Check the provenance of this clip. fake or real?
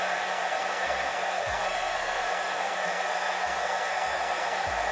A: fake